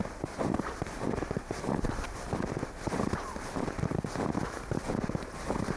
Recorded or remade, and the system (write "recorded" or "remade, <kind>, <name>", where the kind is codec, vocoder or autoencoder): remade, vocoder, BigVGAN v2